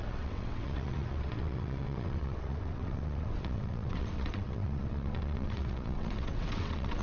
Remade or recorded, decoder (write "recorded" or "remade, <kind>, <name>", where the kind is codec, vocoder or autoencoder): remade, vocoder, WaveNeXt